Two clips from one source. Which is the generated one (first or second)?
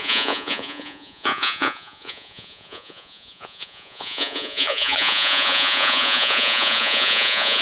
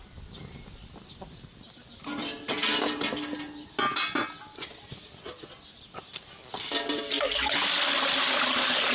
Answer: first